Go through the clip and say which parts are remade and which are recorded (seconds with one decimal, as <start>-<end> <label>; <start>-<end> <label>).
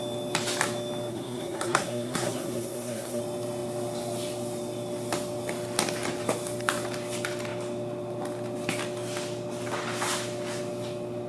0.0-1.1 recorded; 1.1-3.2 remade; 3.2-11.3 recorded